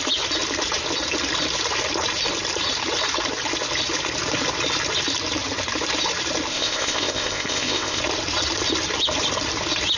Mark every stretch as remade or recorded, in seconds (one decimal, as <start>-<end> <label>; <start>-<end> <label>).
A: 0.0-6.5 recorded; 6.5-8.0 remade; 8.0-10.0 recorded